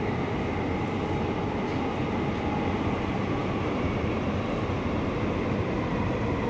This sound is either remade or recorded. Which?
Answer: recorded